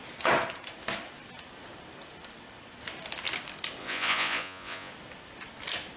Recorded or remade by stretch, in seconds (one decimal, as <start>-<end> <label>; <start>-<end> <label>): 0.0-3.8 recorded; 3.8-4.9 remade; 4.9-6.0 recorded